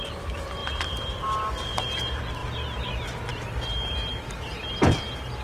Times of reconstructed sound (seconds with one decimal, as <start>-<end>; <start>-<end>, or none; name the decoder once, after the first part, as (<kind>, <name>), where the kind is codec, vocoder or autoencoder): none